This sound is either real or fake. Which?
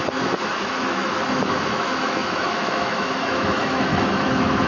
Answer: fake